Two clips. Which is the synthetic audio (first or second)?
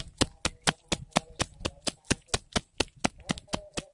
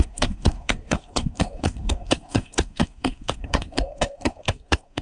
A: second